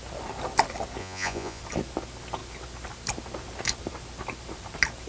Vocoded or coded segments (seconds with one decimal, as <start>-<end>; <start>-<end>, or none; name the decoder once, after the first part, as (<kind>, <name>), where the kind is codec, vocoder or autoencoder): 1.0-1.6 (vocoder, Vocos)